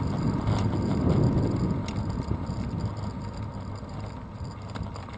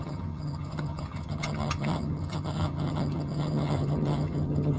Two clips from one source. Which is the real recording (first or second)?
first